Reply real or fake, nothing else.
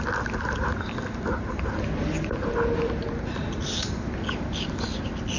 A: real